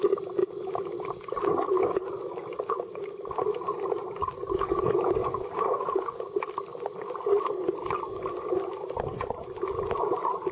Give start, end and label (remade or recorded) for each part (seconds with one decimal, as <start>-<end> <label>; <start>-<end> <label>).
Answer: 0.0-5.2 recorded; 5.2-6.2 remade; 6.2-10.5 recorded